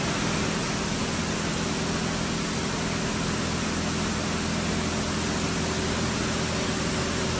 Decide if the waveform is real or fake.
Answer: real